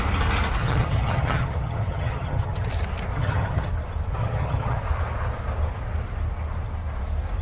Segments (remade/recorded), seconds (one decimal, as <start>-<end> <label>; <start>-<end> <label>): 0.0-0.6 recorded; 0.6-2.7 remade; 2.7-3.1 recorded; 3.1-3.7 remade; 3.7-4.2 recorded; 4.2-4.8 remade; 4.8-7.4 recorded

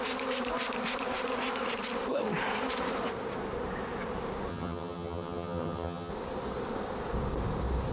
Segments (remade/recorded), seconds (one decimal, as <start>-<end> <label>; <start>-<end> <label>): 0.0-4.5 recorded; 4.5-6.1 remade; 6.1-7.9 recorded

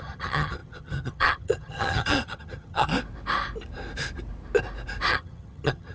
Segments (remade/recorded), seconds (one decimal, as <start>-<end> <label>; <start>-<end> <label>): 0.0-2.9 remade; 2.9-5.1 recorded; 5.1-5.9 remade

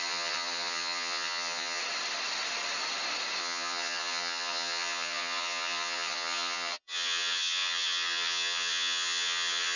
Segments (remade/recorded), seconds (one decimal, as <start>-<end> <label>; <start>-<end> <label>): 0.0-1.8 remade; 1.8-3.4 recorded; 3.4-9.8 remade

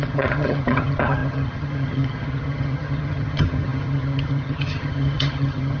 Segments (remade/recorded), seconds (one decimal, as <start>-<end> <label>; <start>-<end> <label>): 0.0-5.8 remade

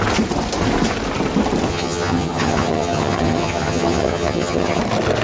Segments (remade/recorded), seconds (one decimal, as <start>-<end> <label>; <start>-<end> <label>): 0.0-1.7 recorded; 1.7-4.8 remade; 4.8-5.2 recorded

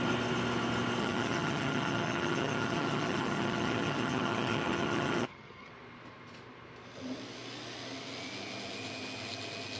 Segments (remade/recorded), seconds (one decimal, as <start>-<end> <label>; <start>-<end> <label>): 0.0-1.0 recorded; 1.0-5.7 remade; 5.7-9.8 recorded

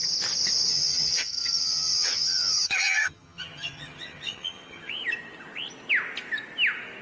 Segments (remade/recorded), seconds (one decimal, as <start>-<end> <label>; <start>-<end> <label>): 0.0-0.7 recorded; 0.7-4.9 remade; 4.9-7.0 recorded